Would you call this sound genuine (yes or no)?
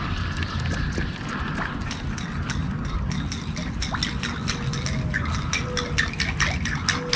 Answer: yes